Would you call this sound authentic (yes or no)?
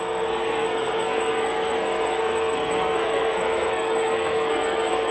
no